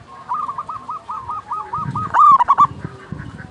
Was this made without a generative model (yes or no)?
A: no